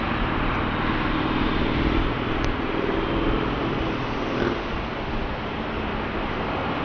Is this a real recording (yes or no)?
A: yes